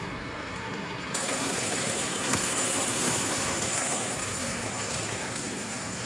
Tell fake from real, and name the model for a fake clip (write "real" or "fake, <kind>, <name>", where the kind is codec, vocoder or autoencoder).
fake, codec, SNAC